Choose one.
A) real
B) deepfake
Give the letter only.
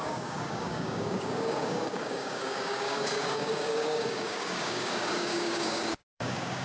B